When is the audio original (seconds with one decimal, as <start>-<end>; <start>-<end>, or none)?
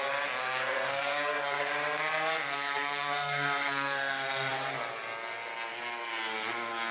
0.0-0.4; 4.5-6.9